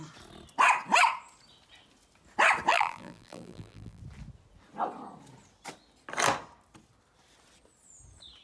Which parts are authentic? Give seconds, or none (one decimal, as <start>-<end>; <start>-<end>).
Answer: 0.0-2.7; 4.0-8.4